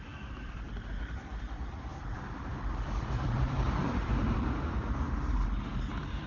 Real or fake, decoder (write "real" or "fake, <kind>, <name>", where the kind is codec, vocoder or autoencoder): fake, vocoder, BigVGAN v2